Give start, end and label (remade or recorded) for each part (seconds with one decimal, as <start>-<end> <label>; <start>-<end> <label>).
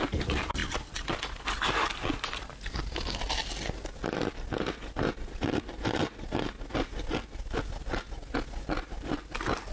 0.0-9.7 recorded